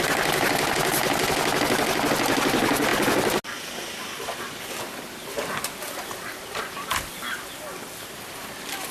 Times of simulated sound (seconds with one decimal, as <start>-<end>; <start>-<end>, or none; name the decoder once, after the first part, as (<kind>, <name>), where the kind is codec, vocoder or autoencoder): none